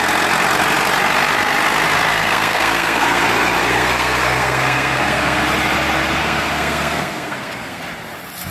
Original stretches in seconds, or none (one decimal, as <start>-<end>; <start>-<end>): 0.0-2.1; 3.2-3.7; 5.4-6.2; 7.8-8.5